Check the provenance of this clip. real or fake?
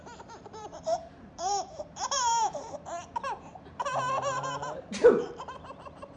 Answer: fake